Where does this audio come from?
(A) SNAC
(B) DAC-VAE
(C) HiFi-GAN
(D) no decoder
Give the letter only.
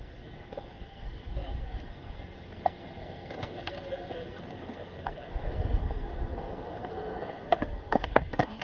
A